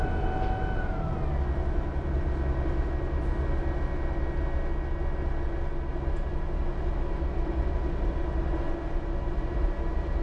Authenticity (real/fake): real